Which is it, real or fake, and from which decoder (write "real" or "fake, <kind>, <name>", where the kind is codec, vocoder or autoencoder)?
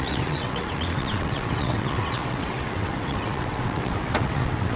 fake, vocoder, WaveNeXt